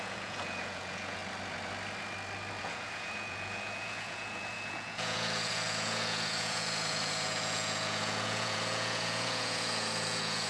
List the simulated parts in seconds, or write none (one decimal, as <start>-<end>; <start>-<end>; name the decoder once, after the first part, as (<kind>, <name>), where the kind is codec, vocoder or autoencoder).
0.0-1.2 (vocoder, Vocos); 2.6-10.5